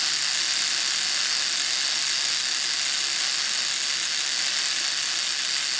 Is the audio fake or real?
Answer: real